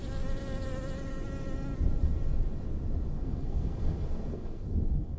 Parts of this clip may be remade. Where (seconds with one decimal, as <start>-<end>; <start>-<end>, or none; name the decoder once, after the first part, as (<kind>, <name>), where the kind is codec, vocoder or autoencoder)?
3.1-5.2 (codec, SNAC)